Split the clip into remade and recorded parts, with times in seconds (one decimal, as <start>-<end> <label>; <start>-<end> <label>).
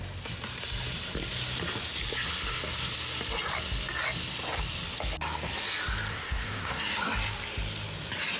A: 0.0-6.1 recorded; 6.1-6.8 remade; 6.8-8.4 recorded